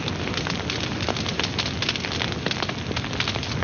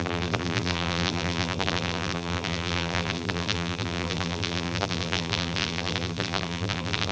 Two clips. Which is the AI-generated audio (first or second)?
second